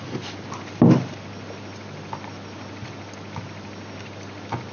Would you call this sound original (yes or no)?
no